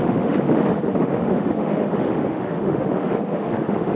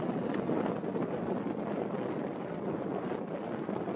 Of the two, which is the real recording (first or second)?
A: second